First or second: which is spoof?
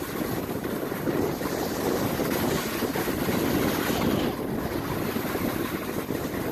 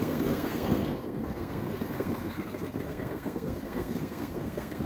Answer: second